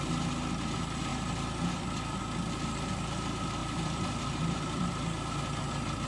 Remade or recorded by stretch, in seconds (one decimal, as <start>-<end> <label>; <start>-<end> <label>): 0.0-1.1 recorded; 1.1-2.2 remade; 2.2-3.6 recorded; 3.6-4.9 remade; 4.9-6.1 recorded